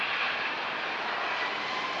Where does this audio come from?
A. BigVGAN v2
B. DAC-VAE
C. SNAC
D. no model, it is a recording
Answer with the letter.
A